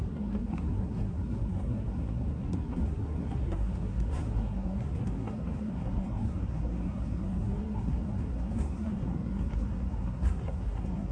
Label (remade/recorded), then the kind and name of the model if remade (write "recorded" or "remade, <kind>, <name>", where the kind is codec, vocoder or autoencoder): remade, codec, SNAC